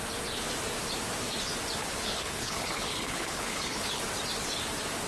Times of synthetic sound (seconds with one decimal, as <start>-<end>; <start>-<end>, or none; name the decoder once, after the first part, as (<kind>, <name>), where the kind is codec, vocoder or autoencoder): 1.8-4.0 (codec, HILCodec)